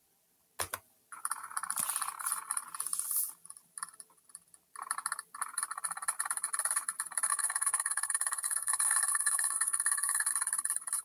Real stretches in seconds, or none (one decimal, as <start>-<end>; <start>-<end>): 0.0-7.3; 10.3-11.0